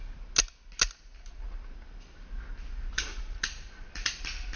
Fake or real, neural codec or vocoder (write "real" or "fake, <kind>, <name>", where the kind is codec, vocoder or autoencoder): real